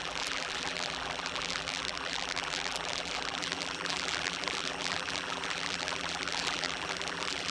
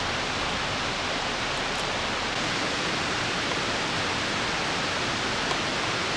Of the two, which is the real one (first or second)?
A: second